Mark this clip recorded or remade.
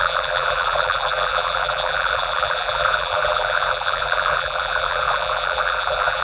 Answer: remade